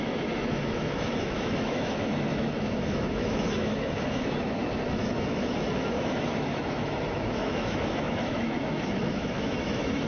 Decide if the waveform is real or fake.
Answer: fake